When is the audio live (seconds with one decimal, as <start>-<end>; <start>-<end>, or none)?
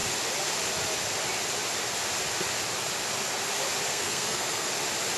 0.0-3.9; 4.7-5.2